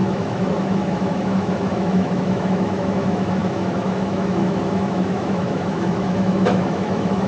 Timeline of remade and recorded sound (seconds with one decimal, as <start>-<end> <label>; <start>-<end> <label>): 0.0-7.3 remade